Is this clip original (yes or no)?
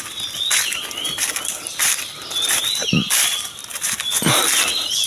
yes